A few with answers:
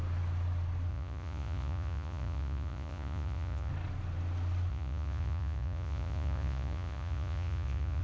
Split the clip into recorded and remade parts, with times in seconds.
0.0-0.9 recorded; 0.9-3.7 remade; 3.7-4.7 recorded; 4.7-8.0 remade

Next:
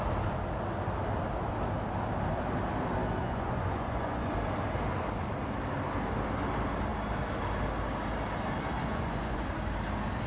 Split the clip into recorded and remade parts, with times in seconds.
0.0-3.2 recorded; 3.2-4.3 remade; 4.3-8.8 recorded; 8.8-9.4 remade; 9.4-10.3 recorded